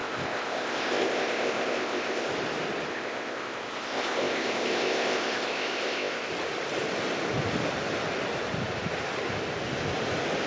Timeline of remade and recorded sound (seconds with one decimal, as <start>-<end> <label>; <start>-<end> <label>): 0.0-2.3 remade; 2.3-2.9 recorded; 2.9-6.3 remade; 6.3-10.5 recorded